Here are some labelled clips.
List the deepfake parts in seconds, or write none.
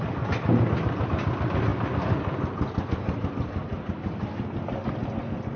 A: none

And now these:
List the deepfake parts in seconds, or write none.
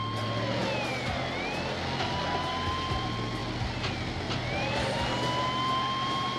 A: none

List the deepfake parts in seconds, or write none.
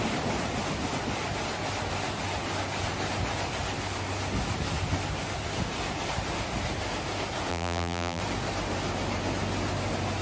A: 7.5-8.2